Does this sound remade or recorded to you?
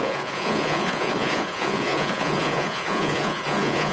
remade